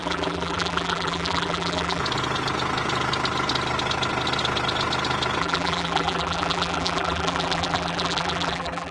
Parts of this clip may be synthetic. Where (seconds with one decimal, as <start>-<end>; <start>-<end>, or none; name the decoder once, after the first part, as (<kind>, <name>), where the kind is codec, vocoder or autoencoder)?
0.0-2.0 (vocoder, BigVGAN v2); 5.4-8.9